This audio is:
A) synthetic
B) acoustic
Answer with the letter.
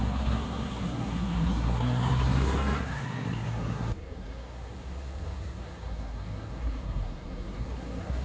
A